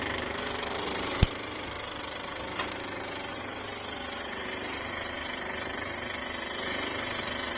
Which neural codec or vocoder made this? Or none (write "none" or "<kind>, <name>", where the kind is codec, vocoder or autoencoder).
vocoder, BigVGAN v2